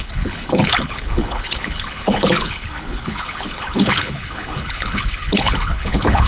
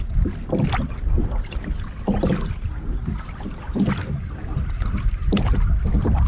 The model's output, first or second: first